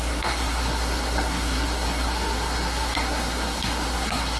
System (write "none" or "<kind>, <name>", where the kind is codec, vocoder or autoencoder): codec, SNAC